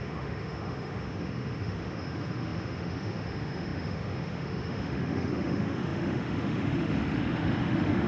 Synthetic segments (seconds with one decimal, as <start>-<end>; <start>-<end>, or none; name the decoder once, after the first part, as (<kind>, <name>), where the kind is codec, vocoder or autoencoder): 0.0-8.1 (autoencoder, DAC-VAE)